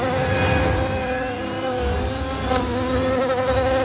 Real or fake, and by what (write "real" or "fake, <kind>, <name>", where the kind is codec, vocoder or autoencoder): real